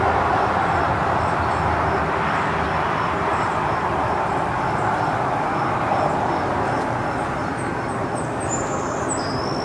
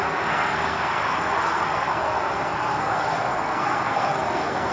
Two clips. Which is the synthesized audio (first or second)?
second